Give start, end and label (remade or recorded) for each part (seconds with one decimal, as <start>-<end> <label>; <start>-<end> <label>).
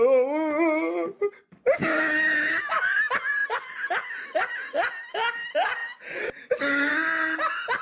0.0-7.8 recorded